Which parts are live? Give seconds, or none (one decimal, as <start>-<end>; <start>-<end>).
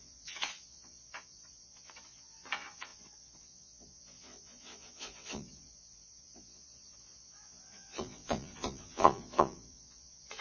none